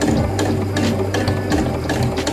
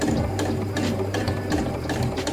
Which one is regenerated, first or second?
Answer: second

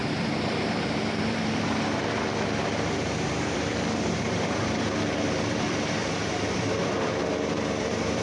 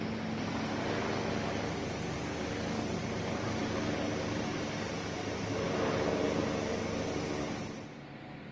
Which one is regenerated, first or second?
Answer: first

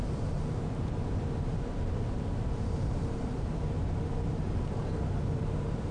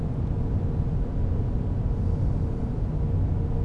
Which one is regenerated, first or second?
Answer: first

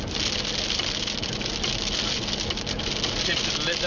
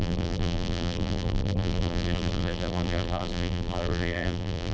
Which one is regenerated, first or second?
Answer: second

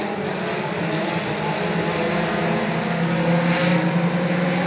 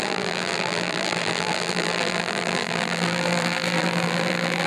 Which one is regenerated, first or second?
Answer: second